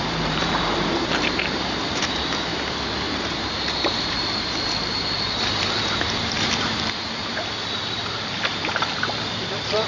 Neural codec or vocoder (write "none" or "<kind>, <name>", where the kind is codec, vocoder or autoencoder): vocoder, BigVGAN v2